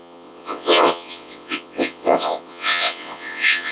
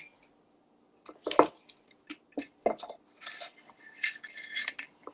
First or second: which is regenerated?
first